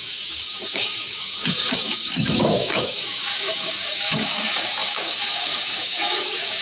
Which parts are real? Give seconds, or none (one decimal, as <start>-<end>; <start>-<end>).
none